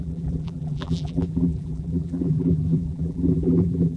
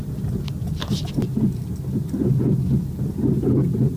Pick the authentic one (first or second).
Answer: second